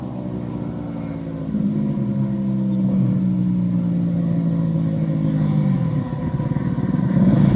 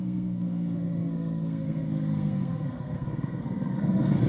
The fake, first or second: second